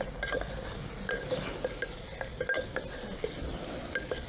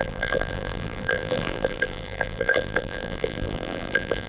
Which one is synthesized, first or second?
second